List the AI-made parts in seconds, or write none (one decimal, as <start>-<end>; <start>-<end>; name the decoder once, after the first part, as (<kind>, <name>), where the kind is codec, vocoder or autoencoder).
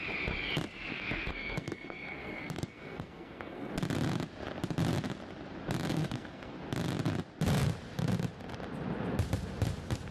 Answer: 0.9-3.7 (codec, SNAC); 5.9-6.6